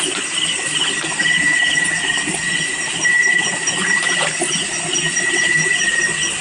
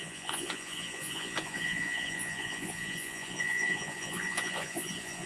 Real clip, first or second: first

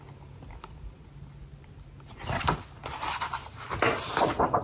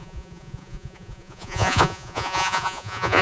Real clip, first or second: first